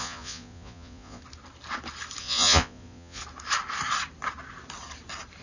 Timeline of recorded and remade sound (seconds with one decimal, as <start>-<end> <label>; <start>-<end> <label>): 0.0-1.2 remade; 1.2-2.2 recorded; 2.2-3.2 remade; 3.2-5.4 recorded